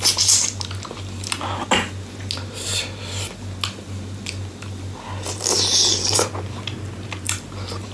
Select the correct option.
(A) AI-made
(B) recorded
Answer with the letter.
B